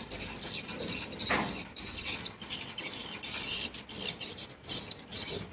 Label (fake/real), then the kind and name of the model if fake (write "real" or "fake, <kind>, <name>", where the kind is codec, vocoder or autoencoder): fake, vocoder, BigVGAN v2